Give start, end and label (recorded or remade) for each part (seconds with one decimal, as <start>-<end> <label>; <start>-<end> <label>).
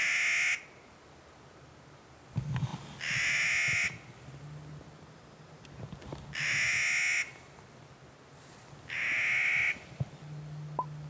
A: 0.0-11.1 recorded